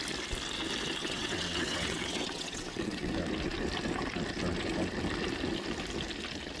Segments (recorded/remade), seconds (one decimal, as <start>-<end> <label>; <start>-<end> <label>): 0.0-1.0 recorded; 1.0-3.1 remade; 3.1-6.6 recorded